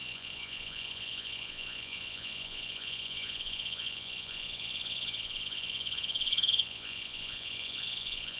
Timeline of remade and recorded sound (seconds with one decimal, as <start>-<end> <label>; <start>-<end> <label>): 0.0-8.4 remade

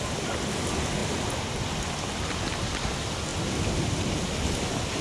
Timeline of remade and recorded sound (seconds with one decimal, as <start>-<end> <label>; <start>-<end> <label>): 0.0-5.0 recorded

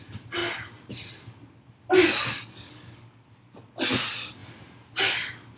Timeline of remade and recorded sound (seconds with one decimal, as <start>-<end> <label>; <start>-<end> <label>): 0.0-2.0 recorded; 2.0-3.7 remade; 3.7-5.6 recorded

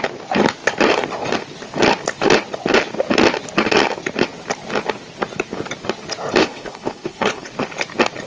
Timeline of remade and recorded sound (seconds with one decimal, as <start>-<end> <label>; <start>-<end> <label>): 0.0-6.4 recorded; 6.4-7.5 remade; 7.5-8.3 recorded

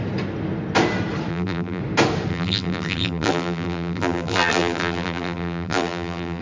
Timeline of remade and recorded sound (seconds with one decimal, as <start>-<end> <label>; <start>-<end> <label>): 0.0-1.3 recorded; 1.3-1.8 remade; 1.8-2.3 recorded; 2.3-6.4 remade

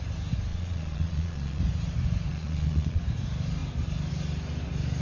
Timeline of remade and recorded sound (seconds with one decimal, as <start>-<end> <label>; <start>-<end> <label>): 0.0-0.5 recorded; 0.5-1.6 remade; 1.6-2.3 recorded; 2.3-3.0 remade; 3.0-5.0 recorded

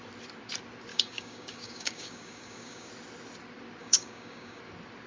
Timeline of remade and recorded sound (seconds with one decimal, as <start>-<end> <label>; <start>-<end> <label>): 0.0-0.9 recorded; 0.9-2.9 remade; 2.9-3.8 recorded; 3.8-4.6 remade; 4.6-5.1 recorded